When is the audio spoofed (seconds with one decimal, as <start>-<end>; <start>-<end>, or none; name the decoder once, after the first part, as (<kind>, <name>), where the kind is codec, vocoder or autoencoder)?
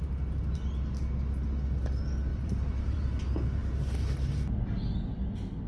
2.3-3.2 (vocoder, BigVGAN v2)